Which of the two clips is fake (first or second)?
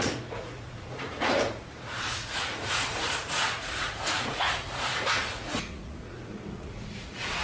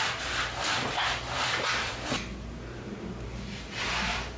first